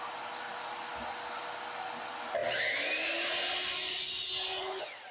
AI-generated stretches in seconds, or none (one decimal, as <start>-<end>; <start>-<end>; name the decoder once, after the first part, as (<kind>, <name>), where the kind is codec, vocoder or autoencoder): none